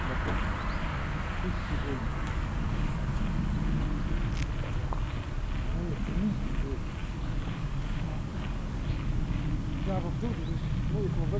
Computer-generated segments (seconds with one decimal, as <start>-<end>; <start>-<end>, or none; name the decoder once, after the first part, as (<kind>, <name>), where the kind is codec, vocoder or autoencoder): 1.6-3.2 (codec, DAC); 7.0-9.4